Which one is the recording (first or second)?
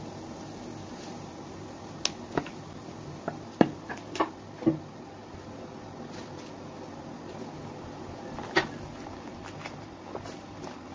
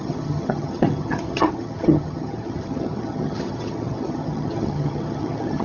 first